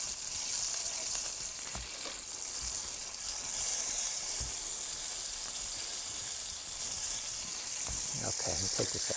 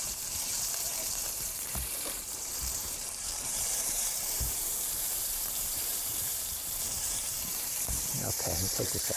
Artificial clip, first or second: second